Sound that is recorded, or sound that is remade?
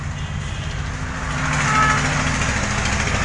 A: recorded